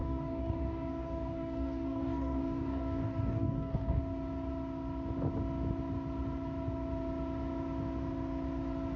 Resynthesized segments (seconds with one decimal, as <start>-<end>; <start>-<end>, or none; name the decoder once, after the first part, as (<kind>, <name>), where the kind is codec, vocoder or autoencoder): 0.0-4.0 (codec, DAC)